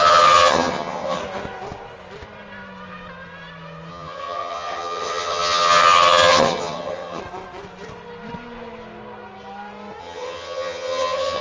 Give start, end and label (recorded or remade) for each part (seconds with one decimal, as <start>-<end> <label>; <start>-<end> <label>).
0.0-1.2 remade; 1.2-3.9 recorded; 3.9-7.2 remade; 7.2-10.0 recorded; 10.0-11.4 remade